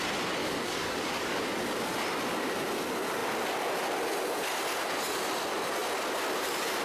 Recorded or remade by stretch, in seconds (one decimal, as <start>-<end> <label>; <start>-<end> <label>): 0.0-0.4 recorded; 0.4-1.4 remade; 1.4-6.8 recorded